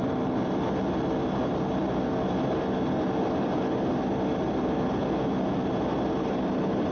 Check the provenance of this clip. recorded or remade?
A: recorded